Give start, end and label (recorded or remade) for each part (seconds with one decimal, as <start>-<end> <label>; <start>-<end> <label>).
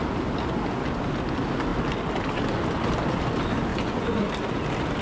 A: 0.0-3.7 recorded; 3.7-4.3 remade; 4.3-5.0 recorded